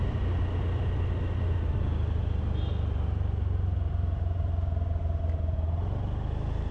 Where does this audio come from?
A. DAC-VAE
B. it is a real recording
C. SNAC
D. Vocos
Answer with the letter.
B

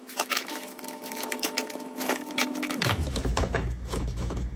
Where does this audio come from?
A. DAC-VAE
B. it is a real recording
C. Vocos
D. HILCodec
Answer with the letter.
A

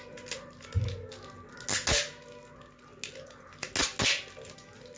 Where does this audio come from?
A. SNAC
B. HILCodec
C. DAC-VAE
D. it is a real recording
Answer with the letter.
D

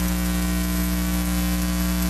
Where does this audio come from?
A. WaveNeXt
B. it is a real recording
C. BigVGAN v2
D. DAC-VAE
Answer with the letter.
D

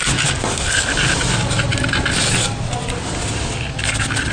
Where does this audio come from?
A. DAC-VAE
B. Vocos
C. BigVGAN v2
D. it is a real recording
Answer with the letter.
D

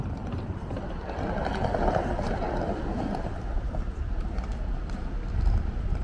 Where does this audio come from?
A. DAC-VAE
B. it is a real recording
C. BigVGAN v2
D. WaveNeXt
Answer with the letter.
B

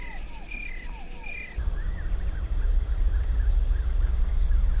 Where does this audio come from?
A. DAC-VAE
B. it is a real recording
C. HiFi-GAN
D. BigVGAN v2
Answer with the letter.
B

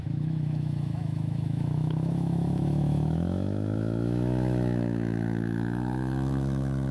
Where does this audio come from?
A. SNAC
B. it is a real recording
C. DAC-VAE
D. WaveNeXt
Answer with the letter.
C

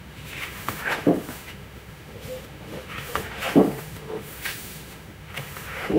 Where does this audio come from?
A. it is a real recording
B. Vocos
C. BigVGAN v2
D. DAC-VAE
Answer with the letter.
D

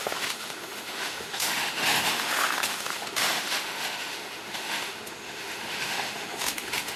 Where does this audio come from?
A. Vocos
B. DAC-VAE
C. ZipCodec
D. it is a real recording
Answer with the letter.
B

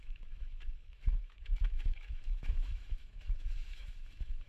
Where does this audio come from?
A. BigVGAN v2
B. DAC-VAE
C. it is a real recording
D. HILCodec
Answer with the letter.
B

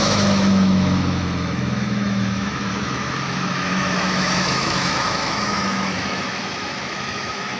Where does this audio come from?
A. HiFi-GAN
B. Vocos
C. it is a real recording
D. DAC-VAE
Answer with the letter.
D